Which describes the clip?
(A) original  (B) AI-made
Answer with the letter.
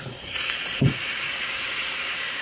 B